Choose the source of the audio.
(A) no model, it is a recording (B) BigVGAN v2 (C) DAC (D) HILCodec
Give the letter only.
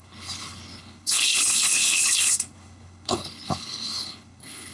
D